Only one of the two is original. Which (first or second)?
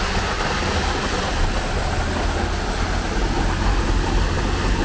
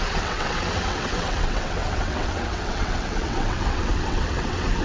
first